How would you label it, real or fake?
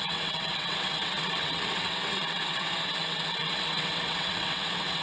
fake